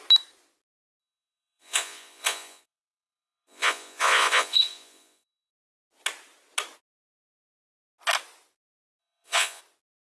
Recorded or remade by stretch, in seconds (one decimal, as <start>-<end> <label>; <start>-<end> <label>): 0.0-1.0 recorded; 1.0-5.5 remade; 5.5-9.0 recorded; 9.0-9.6 remade; 9.6-10.1 recorded